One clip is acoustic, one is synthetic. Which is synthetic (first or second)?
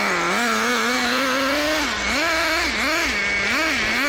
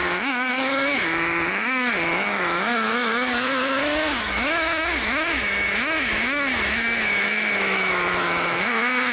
second